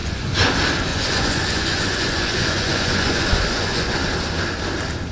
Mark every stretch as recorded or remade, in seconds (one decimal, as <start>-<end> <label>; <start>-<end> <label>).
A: 0.0-0.5 remade; 0.5-0.9 recorded; 0.9-4.0 remade; 4.0-5.1 recorded